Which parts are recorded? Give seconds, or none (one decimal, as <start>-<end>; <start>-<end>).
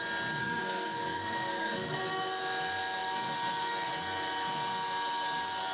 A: 0.0-0.4; 2.0-5.7